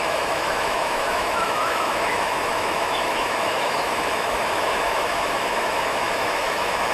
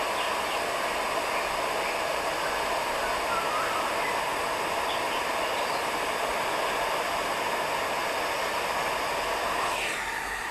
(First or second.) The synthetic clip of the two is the first